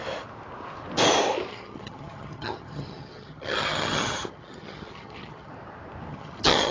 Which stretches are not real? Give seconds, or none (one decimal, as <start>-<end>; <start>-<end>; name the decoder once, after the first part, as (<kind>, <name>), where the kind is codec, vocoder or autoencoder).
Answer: 1.5-5.5 (vocoder, HiFi-GAN); 6.1-6.7